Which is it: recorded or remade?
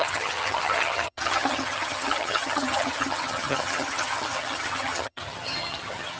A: remade